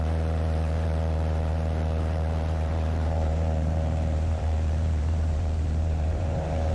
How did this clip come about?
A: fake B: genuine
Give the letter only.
A